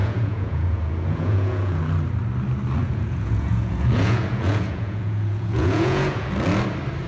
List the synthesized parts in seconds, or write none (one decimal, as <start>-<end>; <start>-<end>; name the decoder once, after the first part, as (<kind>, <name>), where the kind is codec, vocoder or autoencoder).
0.0-1.8 (vocoder, Vocos); 2.8-6.3

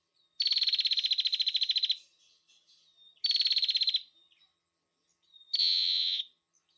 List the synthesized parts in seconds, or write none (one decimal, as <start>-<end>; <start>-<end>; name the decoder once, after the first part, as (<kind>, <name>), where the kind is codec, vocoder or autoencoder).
5.6-6.2 (vocoder, Vocos)

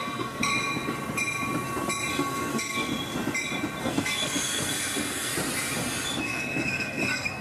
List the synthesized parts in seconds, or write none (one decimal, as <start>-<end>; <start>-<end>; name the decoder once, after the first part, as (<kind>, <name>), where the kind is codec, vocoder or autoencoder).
0.0-0.5 (codec, SNAC); 2.1-2.9; 3.8-5.3; 6.2-7.4

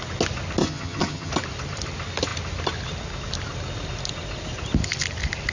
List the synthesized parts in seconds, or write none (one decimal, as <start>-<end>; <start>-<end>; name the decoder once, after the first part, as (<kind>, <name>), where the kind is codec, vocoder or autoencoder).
0.6-1.3 (vocoder, HiFi-GAN)

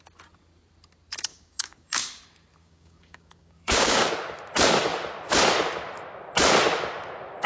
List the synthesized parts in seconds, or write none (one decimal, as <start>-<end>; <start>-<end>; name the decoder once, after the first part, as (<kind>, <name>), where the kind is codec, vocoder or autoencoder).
1.3-2.2 (codec, DAC); 2.6-4.1

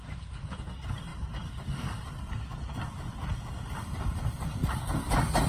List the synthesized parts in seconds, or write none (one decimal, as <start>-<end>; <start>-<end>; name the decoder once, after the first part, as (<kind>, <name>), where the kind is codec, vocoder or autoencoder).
none

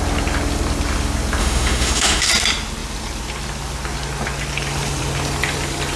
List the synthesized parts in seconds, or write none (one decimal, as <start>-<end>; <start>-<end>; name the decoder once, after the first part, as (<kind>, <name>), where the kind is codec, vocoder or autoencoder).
1.4-2.3 (autoencoder, DAC-VAE)